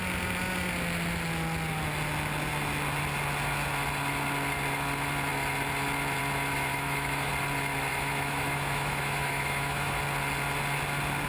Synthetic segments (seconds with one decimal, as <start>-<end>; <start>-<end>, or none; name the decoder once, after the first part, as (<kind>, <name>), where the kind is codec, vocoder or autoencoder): 6.7-7.3 (autoencoder, DAC-VAE); 7.9-10.0